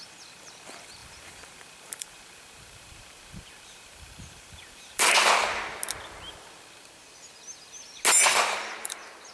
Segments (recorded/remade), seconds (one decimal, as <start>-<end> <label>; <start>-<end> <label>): 0.0-1.0 recorded; 1.0-5.1 remade; 5.1-8.3 recorded; 8.3-9.3 remade